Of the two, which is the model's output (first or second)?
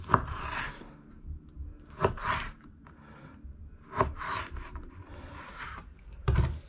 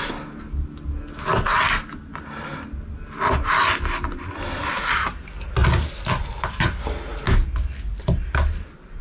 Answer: first